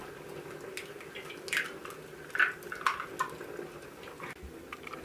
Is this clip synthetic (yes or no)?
no